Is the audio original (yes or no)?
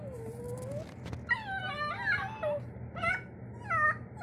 yes